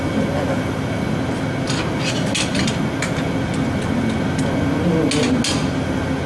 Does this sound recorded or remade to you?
recorded